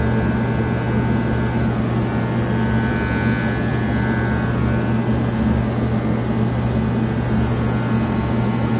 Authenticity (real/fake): real